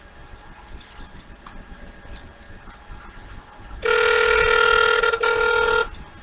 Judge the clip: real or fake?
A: real